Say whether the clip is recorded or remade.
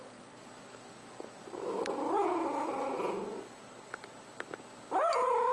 recorded